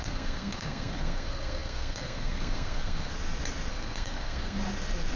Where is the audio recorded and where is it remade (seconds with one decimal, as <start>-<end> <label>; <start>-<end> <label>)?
0.0-3.1 remade; 3.1-3.7 recorded; 3.7-4.6 remade; 4.6-5.2 recorded